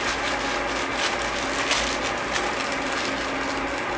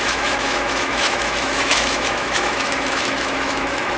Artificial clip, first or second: second